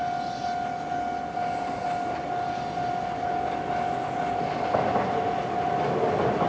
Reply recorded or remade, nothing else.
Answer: recorded